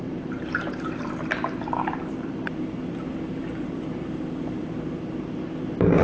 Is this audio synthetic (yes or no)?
yes